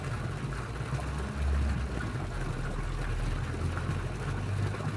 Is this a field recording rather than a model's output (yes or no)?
yes